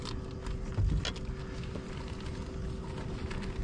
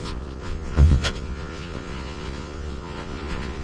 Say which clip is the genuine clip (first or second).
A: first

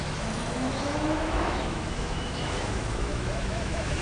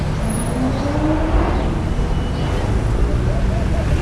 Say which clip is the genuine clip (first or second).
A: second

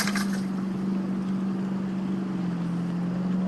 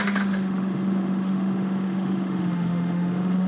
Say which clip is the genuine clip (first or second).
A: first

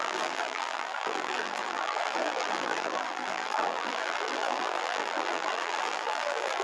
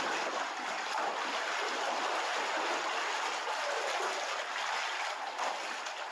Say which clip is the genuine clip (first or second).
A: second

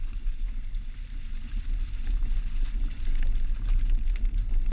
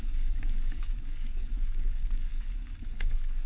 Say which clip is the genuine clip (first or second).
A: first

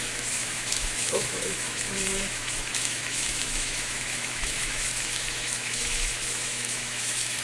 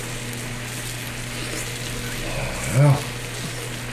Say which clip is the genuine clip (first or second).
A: second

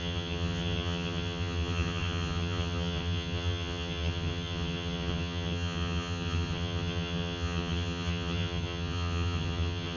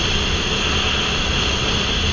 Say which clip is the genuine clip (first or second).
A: second